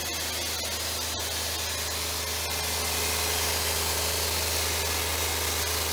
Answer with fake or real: real